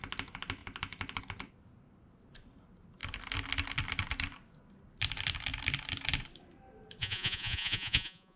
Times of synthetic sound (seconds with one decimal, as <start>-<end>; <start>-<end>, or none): 7.0-8.4